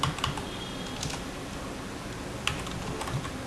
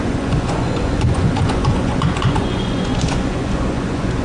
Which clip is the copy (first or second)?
second